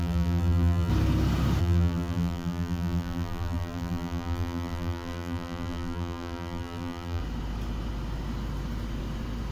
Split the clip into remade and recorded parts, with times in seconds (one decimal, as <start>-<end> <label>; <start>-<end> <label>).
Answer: 0.0-0.9 remade; 0.9-1.6 recorded; 1.6-7.2 remade; 7.2-9.5 recorded